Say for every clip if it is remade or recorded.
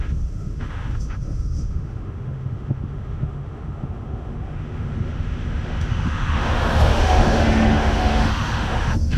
remade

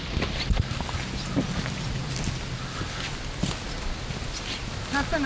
recorded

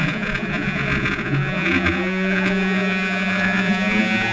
remade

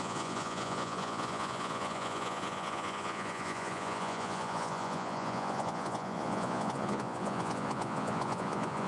remade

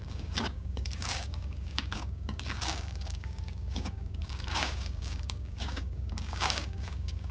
remade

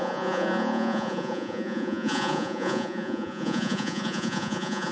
remade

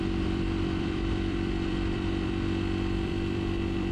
remade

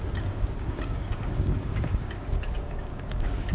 remade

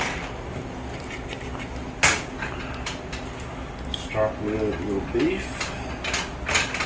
recorded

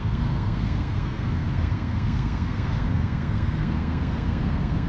remade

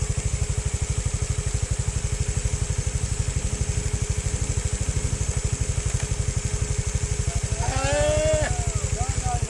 recorded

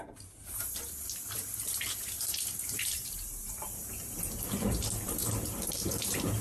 remade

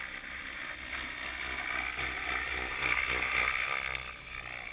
recorded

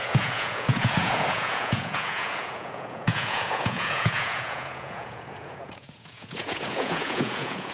remade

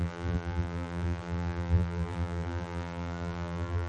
remade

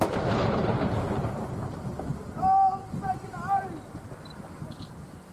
recorded